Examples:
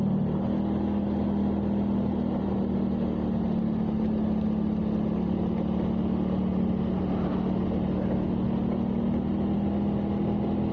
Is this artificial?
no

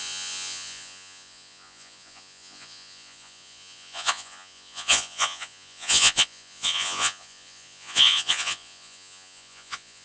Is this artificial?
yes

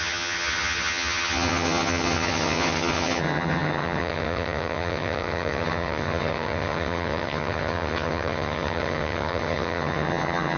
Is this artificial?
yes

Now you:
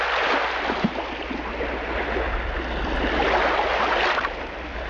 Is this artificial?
no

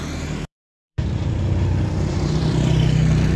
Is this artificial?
yes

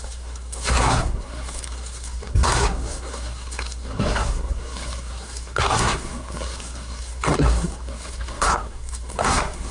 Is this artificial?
yes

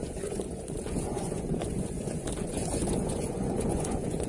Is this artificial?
yes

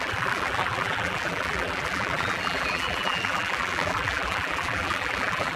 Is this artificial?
yes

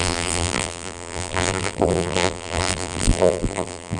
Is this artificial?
yes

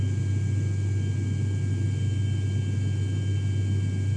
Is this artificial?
no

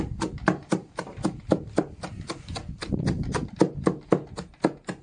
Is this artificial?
no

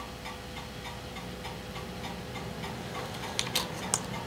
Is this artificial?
no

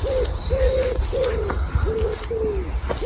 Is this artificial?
no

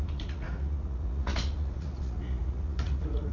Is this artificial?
yes